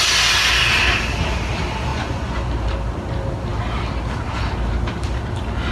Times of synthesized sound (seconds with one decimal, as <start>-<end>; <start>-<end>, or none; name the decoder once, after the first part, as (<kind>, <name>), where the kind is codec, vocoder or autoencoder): 1.9-2.5 (vocoder, Vocos)